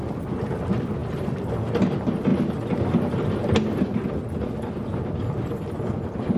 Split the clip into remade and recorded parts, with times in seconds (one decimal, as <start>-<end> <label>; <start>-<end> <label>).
0.0-6.4 recorded